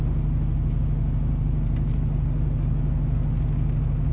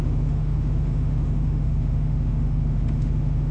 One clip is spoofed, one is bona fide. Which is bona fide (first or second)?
first